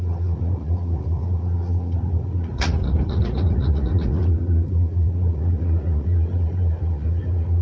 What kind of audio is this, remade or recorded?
remade